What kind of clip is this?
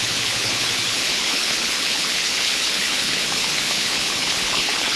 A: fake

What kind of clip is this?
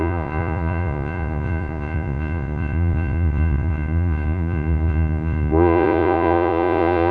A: fake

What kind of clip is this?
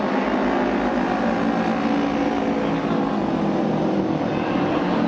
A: real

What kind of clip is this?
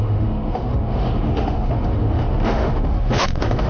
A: fake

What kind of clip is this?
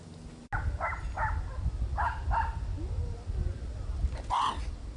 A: real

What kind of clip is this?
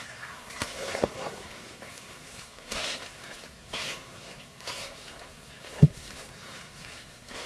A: fake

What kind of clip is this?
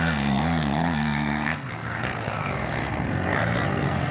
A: fake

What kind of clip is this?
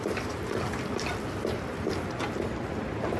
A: fake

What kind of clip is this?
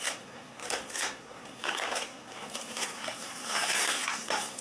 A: fake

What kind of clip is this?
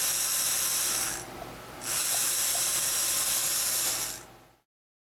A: real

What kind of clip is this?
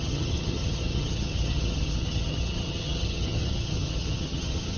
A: fake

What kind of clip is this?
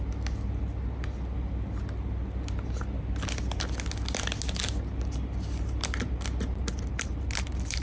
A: real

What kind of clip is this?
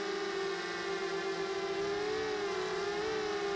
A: real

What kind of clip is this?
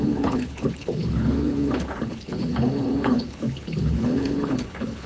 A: fake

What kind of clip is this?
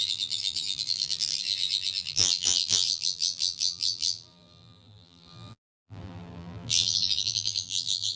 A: fake